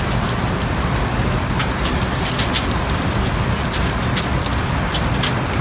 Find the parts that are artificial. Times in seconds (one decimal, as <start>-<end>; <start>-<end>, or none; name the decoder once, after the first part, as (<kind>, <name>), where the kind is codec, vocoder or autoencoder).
none